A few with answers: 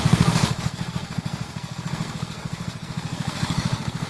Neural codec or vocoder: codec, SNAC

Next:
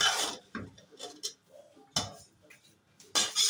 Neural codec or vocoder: none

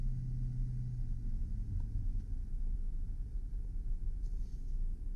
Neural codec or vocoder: none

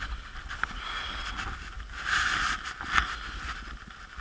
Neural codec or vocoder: none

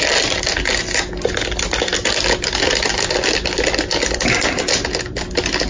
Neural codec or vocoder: none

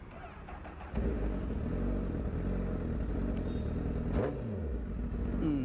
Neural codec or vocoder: none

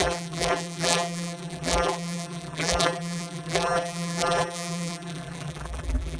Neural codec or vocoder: vocoder, BigVGAN v2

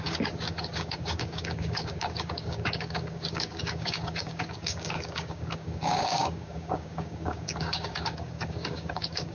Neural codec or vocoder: codec, DAC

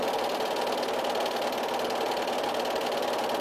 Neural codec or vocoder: none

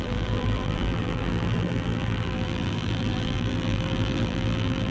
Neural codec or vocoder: vocoder, BigVGAN v2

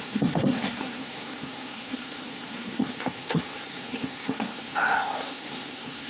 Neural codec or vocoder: codec, SNAC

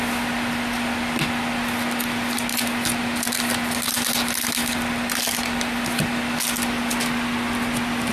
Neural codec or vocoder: none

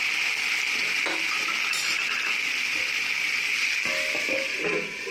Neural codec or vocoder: none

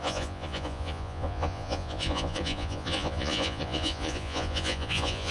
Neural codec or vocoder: vocoder, Vocos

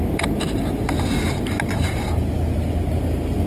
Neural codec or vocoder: none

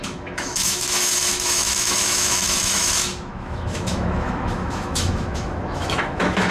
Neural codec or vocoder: autoencoder, DAC-VAE